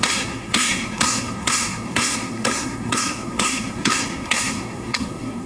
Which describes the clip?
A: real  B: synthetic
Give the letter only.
B